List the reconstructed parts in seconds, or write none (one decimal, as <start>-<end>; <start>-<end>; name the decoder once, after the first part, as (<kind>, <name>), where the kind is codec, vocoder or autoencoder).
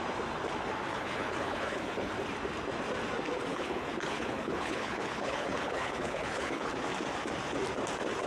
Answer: 0.9-2.1 (codec, HILCodec); 3.5-6.7